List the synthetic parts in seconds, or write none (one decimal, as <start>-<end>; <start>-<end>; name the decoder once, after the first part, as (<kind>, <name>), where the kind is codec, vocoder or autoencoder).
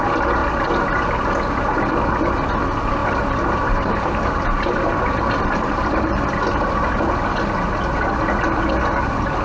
3.0-6.9 (vocoder, BigVGAN v2)